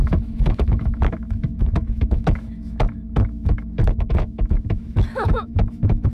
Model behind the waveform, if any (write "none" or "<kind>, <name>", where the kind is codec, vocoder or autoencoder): autoencoder, DAC-VAE